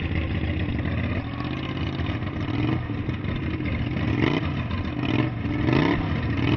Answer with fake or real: real